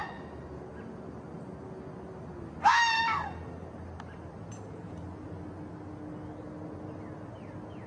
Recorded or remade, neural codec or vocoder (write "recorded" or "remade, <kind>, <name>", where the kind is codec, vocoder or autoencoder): recorded